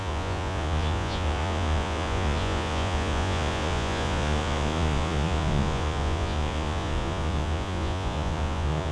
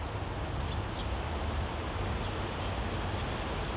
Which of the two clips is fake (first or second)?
first